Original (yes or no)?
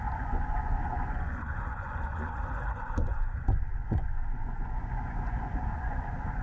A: no